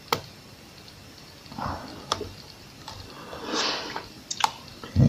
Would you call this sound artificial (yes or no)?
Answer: no